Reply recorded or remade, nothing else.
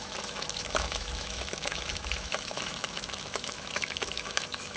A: remade